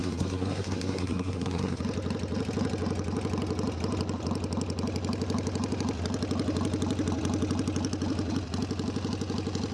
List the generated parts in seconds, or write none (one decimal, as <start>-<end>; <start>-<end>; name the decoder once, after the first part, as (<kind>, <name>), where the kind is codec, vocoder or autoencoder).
0.0-1.8 (codec, SNAC)

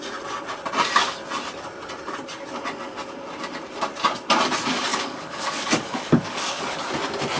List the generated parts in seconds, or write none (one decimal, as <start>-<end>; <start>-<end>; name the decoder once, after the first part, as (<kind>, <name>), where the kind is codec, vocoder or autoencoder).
4.9-6.9 (codec, DAC)

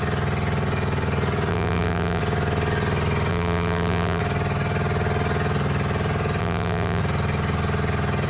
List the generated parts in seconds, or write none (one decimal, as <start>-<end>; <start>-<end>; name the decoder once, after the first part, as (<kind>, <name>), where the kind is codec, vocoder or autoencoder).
1.5-2.2 (vocoder, BigVGAN v2); 3.3-4.2; 6.4-7.0